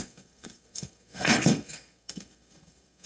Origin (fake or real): fake